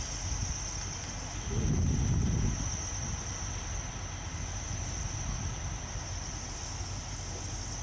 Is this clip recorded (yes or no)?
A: yes